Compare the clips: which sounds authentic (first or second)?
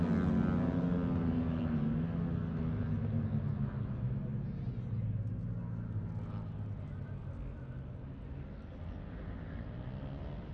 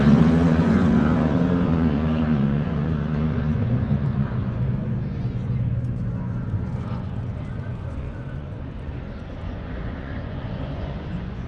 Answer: first